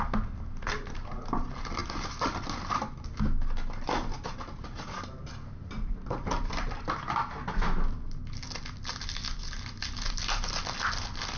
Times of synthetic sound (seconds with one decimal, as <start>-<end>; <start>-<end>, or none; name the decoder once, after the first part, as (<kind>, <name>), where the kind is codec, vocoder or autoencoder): none